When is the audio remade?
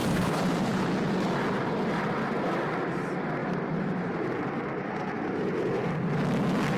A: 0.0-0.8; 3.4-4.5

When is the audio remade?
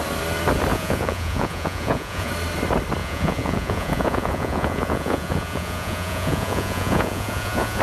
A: 0.7-2.3; 3.0-7.8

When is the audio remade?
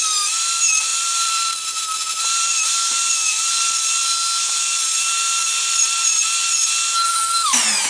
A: 0.0-4.0; 7.1-7.9